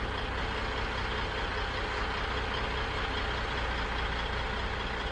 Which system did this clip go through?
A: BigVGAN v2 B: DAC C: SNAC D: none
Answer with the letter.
D